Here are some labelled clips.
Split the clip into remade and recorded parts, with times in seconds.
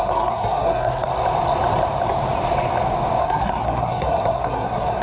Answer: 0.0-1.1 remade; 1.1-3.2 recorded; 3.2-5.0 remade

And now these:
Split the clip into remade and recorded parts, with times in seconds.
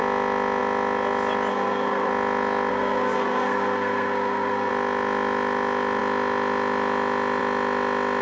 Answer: 0.0-1.5 recorded; 1.5-2.1 remade; 2.1-2.7 recorded; 2.7-4.7 remade; 4.7-8.2 recorded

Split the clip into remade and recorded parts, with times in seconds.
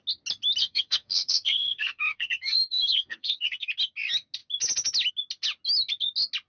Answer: 0.0-0.6 recorded; 0.6-3.7 remade; 3.7-6.5 recorded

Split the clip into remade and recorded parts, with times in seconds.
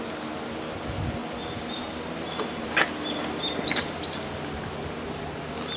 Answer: 0.0-5.8 recorded